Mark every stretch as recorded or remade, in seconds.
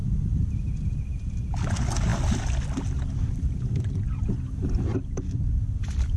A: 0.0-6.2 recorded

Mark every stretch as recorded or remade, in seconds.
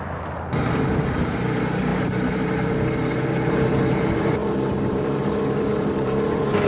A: 0.0-1.9 recorded; 1.9-3.6 remade; 3.6-4.4 recorded; 4.4-5.3 remade; 5.3-5.7 recorded; 5.7-6.7 remade